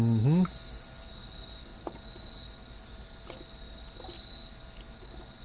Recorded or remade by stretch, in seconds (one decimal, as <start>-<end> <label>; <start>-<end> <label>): 0.0-5.4 recorded